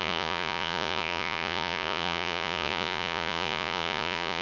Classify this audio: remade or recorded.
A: remade